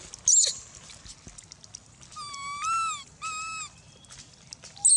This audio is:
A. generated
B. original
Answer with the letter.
B